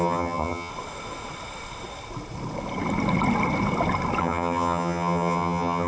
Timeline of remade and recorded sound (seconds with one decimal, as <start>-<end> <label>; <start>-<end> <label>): 0.0-0.7 remade; 0.7-4.2 recorded; 4.2-5.9 remade